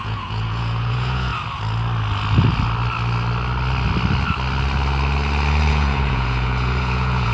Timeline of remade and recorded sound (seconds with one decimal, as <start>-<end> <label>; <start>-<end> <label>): 0.0-1.3 remade; 1.3-5.7 recorded; 5.7-7.3 remade